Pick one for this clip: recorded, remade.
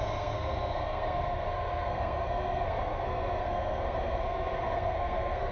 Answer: remade